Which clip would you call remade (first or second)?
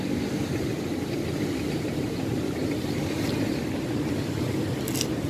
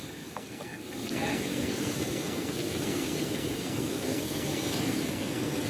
second